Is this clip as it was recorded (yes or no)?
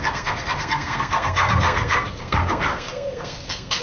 no